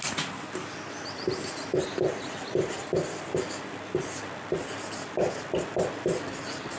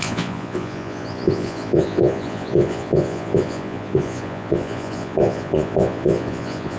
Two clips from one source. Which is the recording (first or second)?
first